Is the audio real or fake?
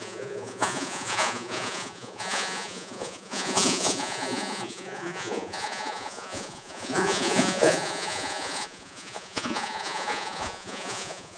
fake